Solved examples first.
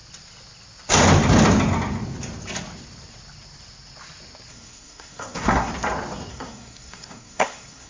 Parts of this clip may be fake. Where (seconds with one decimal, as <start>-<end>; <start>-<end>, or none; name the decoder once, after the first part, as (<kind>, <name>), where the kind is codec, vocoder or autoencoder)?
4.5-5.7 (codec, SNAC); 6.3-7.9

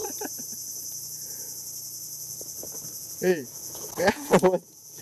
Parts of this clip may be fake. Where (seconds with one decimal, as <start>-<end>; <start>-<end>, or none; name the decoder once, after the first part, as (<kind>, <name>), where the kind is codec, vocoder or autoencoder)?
3.0-5.0 (vocoder, Vocos)

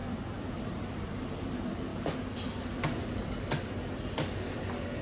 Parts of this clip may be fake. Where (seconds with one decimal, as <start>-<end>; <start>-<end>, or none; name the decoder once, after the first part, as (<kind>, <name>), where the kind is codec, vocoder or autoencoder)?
0.6-1.9 (vocoder, BigVGAN v2)

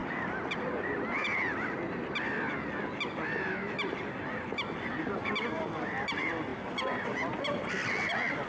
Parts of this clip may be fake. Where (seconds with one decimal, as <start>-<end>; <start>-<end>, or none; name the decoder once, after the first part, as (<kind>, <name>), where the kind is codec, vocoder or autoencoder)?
none

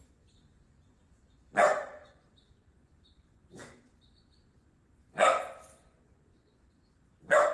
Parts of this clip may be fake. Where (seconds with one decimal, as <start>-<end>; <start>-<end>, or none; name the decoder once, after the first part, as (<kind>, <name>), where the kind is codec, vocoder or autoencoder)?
0.0-7.5 (vocoder, Vocos)